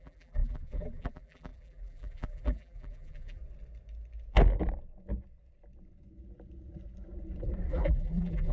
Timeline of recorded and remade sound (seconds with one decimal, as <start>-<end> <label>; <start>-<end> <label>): 0.0-3.4 remade; 3.4-7.7 recorded; 7.7-8.5 remade